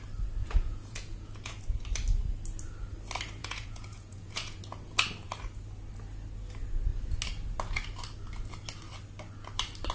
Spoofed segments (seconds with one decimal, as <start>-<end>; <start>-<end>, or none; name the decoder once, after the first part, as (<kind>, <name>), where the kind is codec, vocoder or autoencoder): 0.4-1.6 (vocoder, Vocos); 3.4-4.6